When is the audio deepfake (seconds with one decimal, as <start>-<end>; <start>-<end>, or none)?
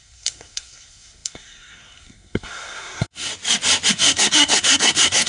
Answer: 0.0-3.3; 3.9-5.3